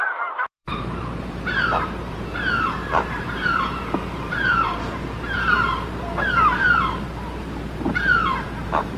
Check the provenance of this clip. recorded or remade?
remade